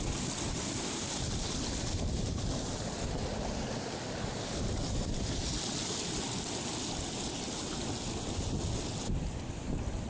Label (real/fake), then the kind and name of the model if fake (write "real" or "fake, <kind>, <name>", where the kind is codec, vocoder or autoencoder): real